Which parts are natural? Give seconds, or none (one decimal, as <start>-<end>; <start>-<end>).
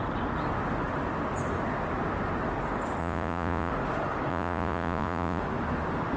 0.0-3.0; 3.7-4.3; 5.4-6.2